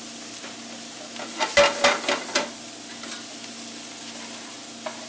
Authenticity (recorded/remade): recorded